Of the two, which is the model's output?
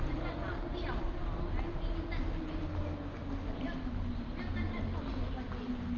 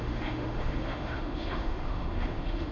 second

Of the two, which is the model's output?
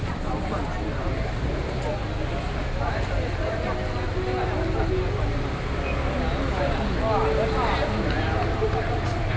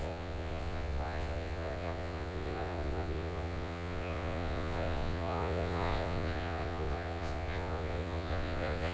second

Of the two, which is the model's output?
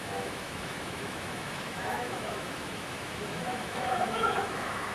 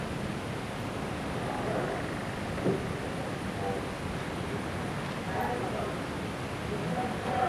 first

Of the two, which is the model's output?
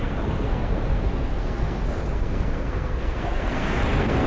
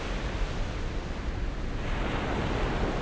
first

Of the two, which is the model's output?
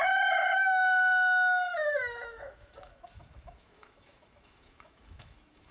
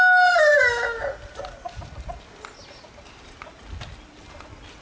first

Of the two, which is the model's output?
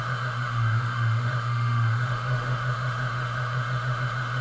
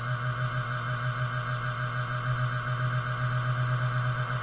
first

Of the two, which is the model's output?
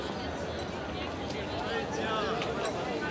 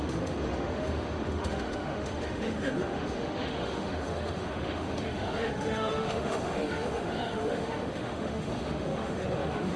second